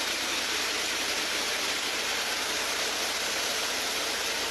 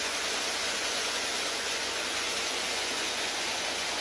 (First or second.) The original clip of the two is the first